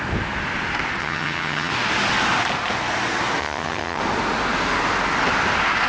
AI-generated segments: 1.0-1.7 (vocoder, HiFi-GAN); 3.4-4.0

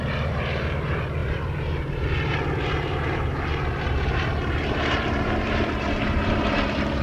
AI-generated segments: 0.0-7.0 (vocoder, BigVGAN v2)

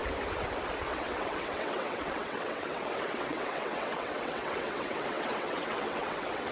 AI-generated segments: 0.9-6.5 (vocoder, WaveNeXt)

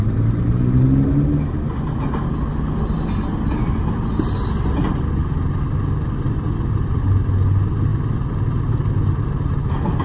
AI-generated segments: none